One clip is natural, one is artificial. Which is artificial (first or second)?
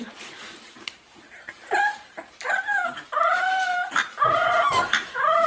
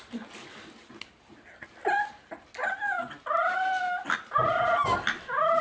first